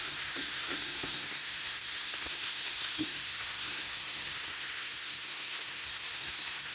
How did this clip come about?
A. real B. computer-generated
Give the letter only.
B